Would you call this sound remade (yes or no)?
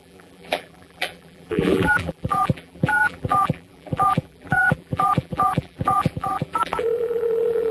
yes